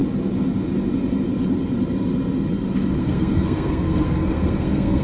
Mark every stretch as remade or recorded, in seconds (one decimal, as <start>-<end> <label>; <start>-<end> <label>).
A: 0.0-3.0 recorded; 3.0-5.0 remade